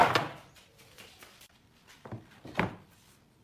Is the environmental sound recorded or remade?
remade